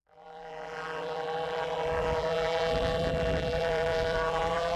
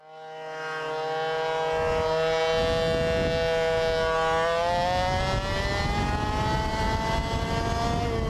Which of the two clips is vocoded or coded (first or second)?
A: first